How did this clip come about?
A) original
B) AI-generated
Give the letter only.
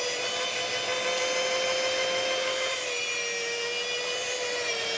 A